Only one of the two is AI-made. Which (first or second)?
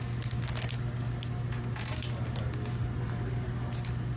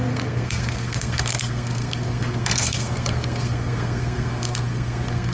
second